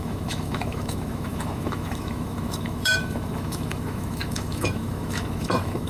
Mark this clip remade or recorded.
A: remade